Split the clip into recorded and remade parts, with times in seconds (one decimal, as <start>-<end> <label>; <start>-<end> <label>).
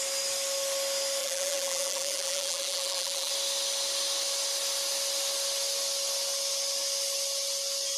0.0-1.2 recorded; 1.2-3.3 remade; 3.3-8.0 recorded